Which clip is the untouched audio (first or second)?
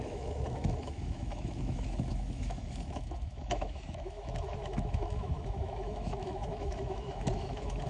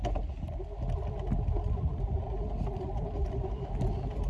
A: second